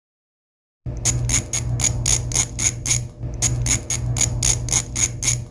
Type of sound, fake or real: real